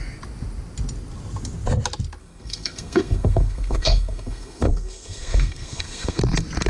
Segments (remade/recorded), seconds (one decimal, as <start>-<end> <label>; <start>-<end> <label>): 0.0-2.2 recorded; 2.2-6.2 remade; 6.2-6.7 recorded